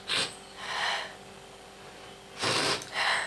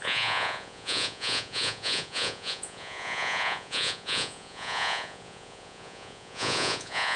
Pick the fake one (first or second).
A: second